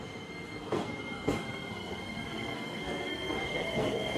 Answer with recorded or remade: remade